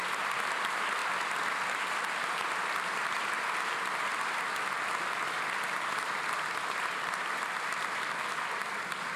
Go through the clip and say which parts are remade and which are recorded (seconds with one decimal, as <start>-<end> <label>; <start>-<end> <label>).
0.0-9.2 recorded